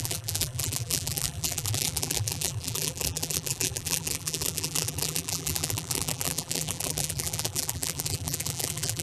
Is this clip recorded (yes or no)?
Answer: no